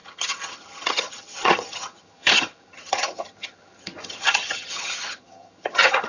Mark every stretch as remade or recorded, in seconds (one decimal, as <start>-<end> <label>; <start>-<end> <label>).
0.0-6.1 remade